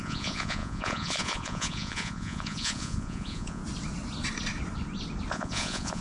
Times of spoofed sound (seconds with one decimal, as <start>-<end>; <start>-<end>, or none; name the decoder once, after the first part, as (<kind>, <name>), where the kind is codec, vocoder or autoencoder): 0.0-3.6 (vocoder, Vocos); 5.3-6.0